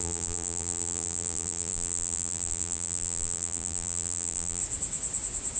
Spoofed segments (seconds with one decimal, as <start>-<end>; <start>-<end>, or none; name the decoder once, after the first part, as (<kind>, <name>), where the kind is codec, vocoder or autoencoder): 0.0-4.6 (vocoder, BigVGAN v2)